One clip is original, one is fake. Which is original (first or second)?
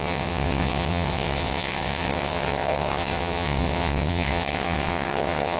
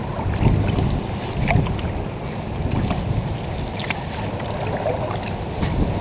second